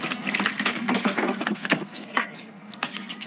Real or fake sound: fake